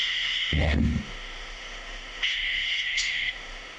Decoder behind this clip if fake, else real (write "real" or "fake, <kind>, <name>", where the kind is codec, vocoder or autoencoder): fake, autoencoder, DAC-VAE